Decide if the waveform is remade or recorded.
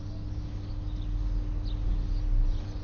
recorded